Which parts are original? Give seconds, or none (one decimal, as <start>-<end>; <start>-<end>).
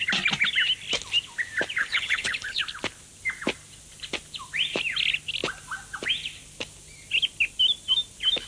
0.0-1.8; 2.6-8.5